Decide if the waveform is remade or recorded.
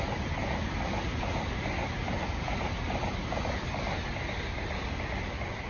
recorded